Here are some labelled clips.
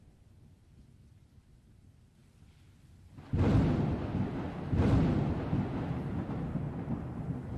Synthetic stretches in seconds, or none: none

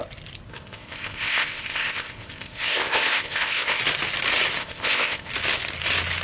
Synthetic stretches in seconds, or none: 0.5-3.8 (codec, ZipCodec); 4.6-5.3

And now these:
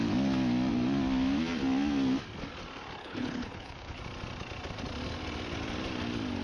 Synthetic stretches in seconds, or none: 3.0-4.0 (codec, HILCodec)